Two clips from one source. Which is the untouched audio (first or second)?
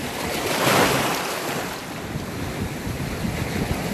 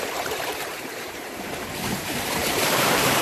first